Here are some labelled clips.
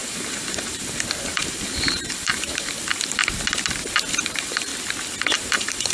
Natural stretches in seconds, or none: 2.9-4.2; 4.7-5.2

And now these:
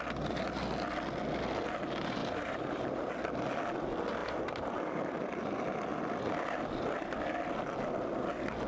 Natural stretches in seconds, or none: 0.0-2.2; 3.1-4.2; 5.1-8.7

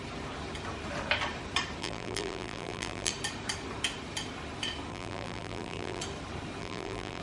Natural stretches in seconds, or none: 0.0-1.8; 3.1-4.9; 6.0-6.6

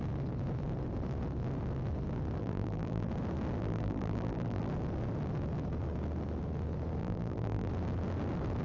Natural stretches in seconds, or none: 0.0-2.4; 3.1-3.6; 4.7-7.0; 7.7-8.6

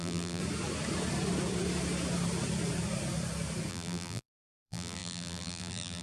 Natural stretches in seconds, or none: 0.4-3.7

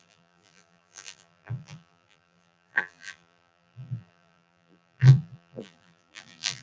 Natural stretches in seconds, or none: none

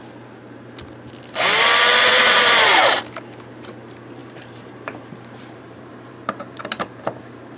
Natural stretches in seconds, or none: 0.0-2.1; 3.0-4.2; 7.1-7.6

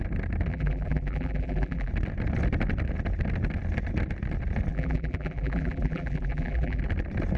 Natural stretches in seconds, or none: 0.0-0.5; 1.9-4.7; 6.8-7.4